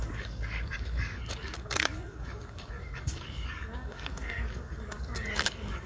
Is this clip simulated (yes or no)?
yes